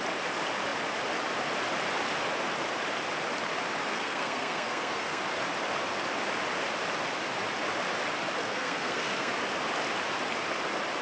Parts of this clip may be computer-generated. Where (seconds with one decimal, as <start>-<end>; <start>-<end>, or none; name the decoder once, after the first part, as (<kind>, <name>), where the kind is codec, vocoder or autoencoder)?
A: 3.9-5.2 (codec, SNAC); 8.4-9.3